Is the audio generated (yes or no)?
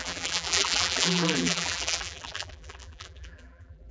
yes